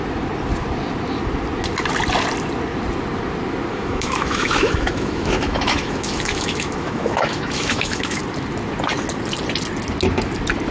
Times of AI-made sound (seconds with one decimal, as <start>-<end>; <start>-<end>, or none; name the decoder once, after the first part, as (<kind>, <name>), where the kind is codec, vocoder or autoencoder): 3.7-8.2 (autoencoder, DAC-VAE)

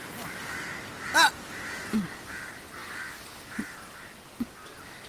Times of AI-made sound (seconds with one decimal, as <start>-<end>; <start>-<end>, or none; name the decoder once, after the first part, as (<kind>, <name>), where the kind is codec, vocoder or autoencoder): none

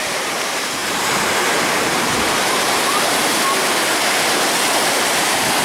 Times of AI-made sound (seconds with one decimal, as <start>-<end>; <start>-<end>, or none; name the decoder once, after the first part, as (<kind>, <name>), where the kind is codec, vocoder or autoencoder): 0.0-3.2 (vocoder, BigVGAN v2)

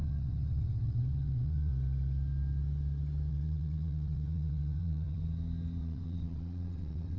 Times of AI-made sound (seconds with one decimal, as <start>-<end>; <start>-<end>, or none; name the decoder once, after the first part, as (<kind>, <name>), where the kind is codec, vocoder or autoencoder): 0.0-1.7 (vocoder, WaveNeXt); 3.3-5.2; 5.8-7.2

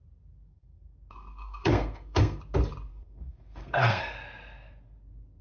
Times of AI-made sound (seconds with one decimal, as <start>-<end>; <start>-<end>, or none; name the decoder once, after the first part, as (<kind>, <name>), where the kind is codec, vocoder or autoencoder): 0.5-2.4 (codec, SNAC); 2.9-4.1

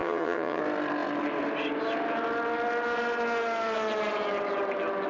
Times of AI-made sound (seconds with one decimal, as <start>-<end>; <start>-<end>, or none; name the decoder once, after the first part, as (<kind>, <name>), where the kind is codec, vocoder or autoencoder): 0.0-0.6 (vocoder, HiFi-GAN)

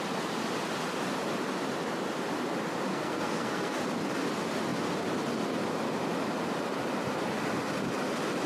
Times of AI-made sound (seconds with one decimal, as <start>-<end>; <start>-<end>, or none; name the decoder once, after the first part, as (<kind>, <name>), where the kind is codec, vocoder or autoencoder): 2.9-3.8 (codec, SNAC)